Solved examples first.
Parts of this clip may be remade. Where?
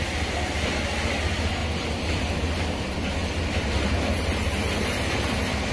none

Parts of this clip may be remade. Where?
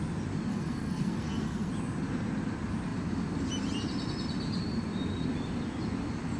0.5-1.7 (codec, SNAC)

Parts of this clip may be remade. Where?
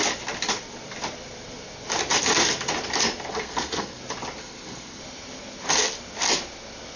3.4-4.0 (codec, SNAC); 4.4-5.0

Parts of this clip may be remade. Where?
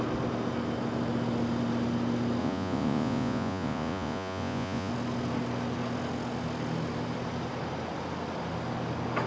2.4-4.9 (vocoder, Vocos)